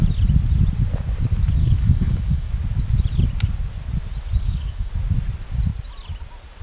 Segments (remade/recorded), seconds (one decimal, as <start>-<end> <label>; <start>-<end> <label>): 0.0-1.6 recorded; 1.6-2.5 remade; 2.5-4.4 recorded; 4.4-4.9 remade; 4.9-6.6 recorded